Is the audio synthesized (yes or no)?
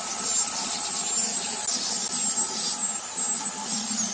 no